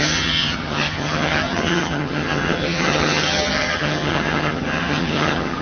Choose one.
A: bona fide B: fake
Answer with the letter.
B